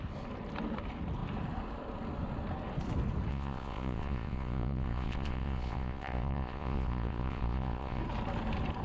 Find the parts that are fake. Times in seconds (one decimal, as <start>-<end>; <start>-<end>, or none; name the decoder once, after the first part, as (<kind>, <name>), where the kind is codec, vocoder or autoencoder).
3.3-8.0 (vocoder, Vocos)